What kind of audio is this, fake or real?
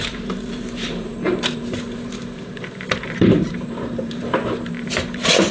fake